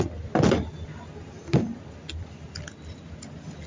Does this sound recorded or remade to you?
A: recorded